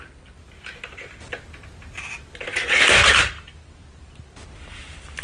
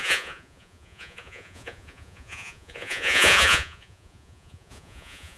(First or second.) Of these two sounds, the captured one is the first